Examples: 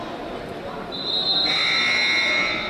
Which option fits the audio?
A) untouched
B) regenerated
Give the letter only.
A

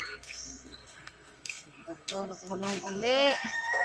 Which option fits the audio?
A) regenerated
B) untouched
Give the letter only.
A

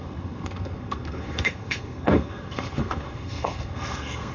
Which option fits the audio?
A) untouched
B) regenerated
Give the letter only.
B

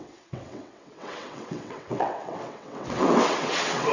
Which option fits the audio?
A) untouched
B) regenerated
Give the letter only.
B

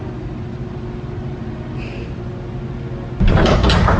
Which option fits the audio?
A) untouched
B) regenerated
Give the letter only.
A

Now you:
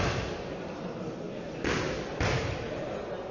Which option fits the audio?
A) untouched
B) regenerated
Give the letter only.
A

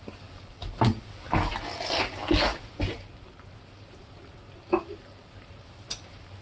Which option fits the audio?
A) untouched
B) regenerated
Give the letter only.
A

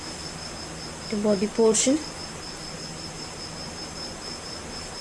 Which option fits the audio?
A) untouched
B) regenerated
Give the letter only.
A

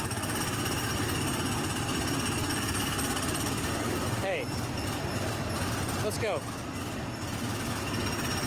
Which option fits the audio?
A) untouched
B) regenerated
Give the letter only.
A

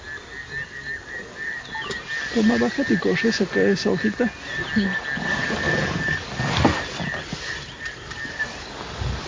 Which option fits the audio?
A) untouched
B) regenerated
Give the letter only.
A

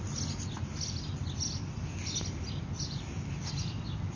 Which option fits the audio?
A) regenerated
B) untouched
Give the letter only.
B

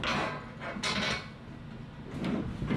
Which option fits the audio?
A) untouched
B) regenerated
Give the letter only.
A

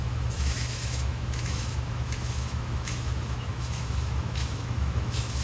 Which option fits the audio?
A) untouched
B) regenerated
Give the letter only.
B